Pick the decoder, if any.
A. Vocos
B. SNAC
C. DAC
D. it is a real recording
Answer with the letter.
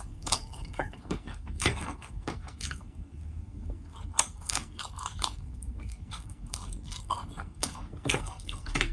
B